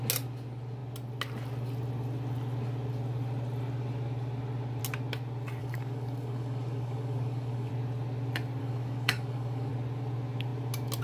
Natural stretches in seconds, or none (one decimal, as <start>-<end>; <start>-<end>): 0.0-5.6; 7.7-8.6; 9.7-11.0